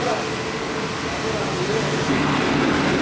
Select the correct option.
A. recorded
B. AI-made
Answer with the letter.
A